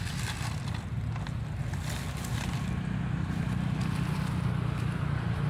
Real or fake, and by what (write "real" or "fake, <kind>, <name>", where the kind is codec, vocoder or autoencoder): real